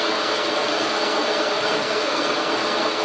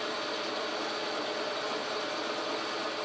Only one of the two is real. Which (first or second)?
second